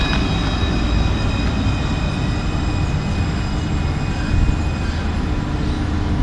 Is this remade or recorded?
recorded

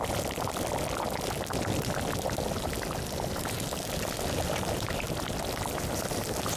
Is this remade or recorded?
recorded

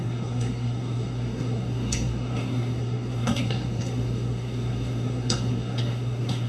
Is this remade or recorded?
remade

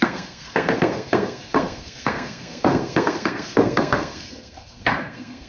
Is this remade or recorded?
remade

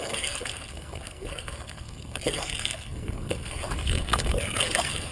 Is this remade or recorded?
remade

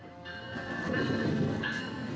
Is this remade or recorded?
remade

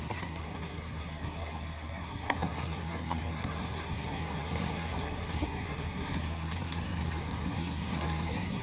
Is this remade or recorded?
remade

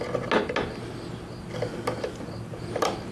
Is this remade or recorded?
recorded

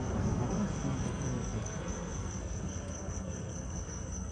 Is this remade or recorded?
remade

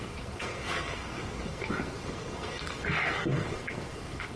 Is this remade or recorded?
remade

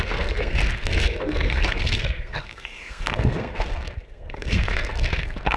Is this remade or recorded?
remade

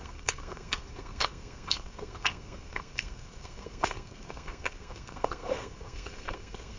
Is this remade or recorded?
remade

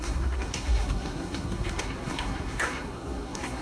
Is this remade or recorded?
remade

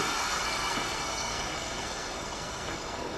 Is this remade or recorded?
remade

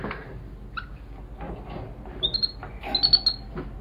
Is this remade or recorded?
recorded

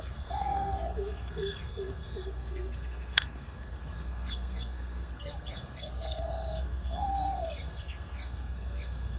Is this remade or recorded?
remade